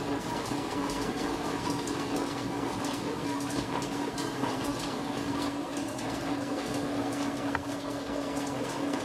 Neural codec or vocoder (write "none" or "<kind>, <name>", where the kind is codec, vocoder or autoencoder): codec, SNAC